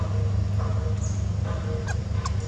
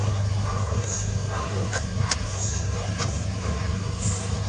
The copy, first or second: second